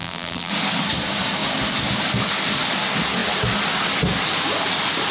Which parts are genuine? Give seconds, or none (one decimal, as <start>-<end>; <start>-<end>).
0.5-5.1